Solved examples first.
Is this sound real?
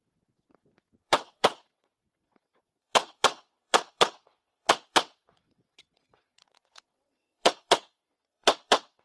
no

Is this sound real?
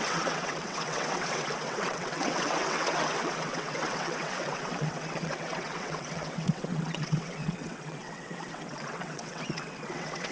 no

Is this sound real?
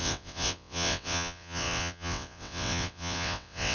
no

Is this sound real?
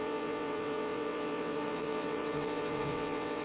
no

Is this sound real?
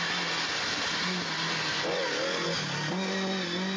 yes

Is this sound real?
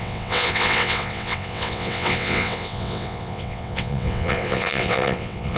no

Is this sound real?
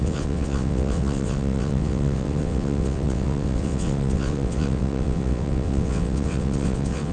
no